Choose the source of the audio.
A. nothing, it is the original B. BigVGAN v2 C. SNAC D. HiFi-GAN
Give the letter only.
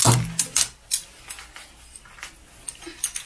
A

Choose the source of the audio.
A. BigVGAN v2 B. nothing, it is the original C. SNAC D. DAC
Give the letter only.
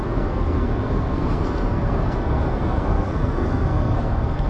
C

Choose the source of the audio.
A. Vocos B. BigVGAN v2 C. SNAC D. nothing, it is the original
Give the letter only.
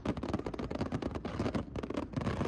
D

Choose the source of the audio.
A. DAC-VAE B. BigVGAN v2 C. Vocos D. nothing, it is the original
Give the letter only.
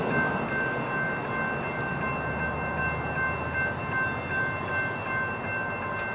D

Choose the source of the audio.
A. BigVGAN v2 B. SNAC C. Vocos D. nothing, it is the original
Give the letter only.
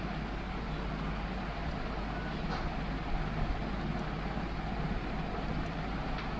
D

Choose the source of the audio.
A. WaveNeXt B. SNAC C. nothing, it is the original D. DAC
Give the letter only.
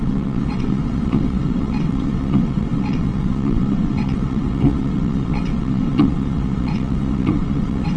A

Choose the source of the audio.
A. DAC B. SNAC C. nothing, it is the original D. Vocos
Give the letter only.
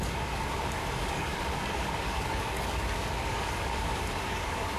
A